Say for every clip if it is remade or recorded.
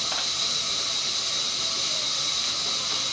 recorded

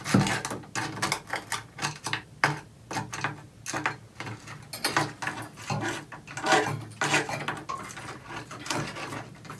recorded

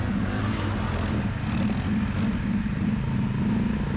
recorded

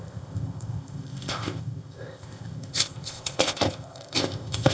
remade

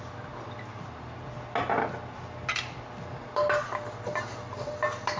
recorded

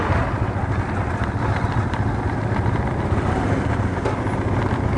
recorded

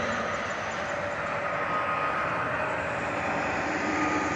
recorded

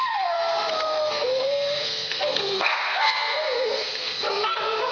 remade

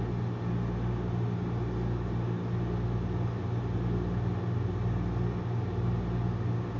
recorded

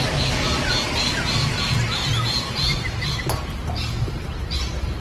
recorded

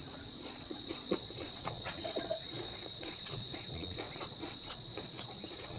remade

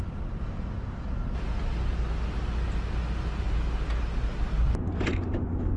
recorded